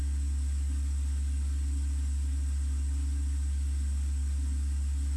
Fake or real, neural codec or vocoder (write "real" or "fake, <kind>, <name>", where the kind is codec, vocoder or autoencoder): real